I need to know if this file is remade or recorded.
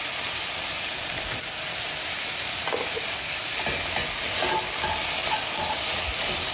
recorded